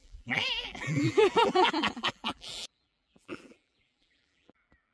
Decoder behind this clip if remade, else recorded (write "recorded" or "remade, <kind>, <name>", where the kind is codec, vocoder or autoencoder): remade, vocoder, BigVGAN v2